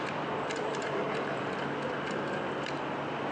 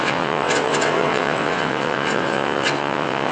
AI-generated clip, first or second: second